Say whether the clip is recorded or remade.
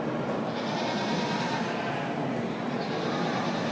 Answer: recorded